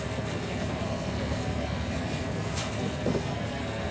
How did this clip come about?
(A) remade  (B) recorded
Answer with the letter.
A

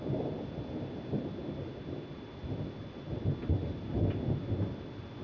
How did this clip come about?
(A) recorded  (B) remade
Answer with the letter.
A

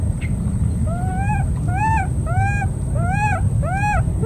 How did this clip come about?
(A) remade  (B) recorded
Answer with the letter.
B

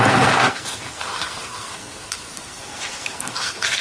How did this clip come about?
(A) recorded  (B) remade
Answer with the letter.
B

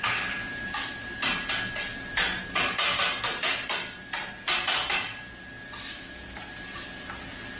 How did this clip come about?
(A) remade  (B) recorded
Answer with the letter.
B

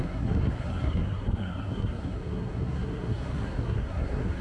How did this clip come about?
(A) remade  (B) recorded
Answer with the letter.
A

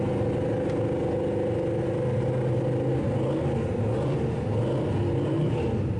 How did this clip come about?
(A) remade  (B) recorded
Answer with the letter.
B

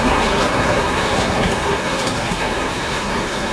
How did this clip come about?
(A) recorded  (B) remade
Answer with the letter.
B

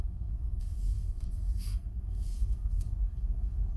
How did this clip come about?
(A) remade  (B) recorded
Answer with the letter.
A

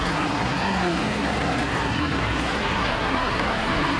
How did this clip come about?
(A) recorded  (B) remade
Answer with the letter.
B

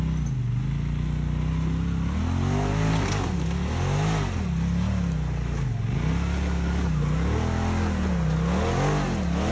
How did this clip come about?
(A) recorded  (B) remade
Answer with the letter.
A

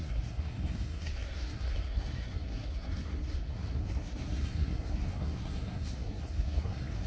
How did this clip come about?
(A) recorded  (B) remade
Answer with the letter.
B